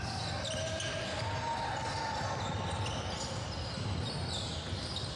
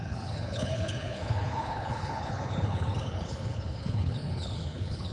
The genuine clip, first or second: first